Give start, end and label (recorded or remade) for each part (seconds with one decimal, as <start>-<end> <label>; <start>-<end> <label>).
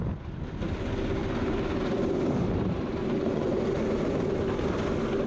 0.0-3.0 recorded; 3.0-3.6 remade; 3.6-5.3 recorded